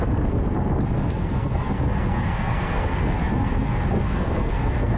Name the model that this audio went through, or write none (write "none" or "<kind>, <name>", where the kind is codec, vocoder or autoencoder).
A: codec, SNAC